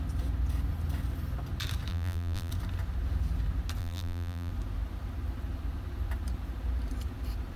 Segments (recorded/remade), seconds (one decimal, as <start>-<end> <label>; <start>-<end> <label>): 0.0-1.9 recorded; 1.9-2.5 remade; 2.5-3.8 recorded; 3.8-4.5 remade; 4.5-7.6 recorded